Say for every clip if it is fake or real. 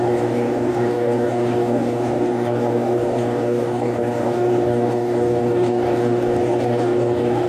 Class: fake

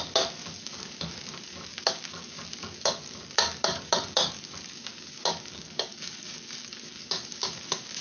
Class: fake